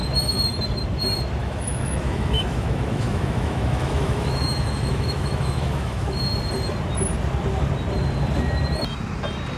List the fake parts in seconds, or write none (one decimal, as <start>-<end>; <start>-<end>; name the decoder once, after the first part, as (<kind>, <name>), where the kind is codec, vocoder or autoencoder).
1.4-6.2 (autoencoder, DAC-VAE)